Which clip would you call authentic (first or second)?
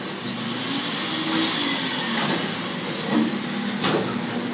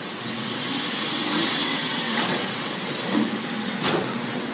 first